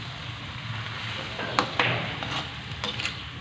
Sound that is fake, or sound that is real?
real